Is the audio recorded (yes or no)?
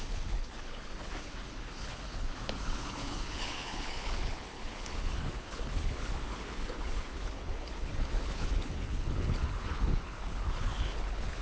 no